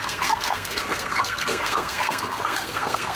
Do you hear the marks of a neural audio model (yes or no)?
yes